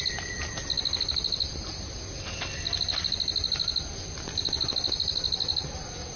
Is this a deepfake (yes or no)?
no